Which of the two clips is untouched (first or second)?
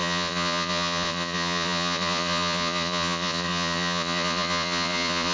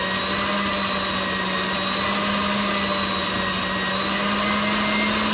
second